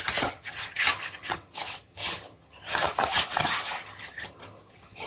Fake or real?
fake